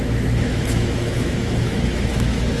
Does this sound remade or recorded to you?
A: remade